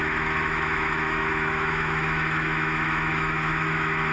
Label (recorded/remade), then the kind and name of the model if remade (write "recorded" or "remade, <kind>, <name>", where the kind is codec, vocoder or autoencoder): remade, autoencoder, DAC-VAE